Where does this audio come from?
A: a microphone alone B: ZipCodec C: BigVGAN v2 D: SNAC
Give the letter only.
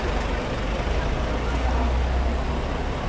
A